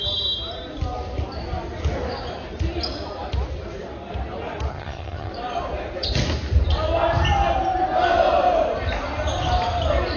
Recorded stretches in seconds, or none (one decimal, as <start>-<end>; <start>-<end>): 0.0-4.7; 5.3-10.2